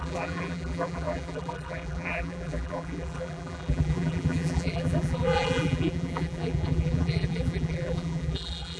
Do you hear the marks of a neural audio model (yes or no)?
yes